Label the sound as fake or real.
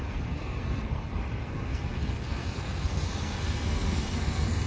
fake